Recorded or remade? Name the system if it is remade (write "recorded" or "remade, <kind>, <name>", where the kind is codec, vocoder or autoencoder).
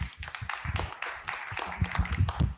recorded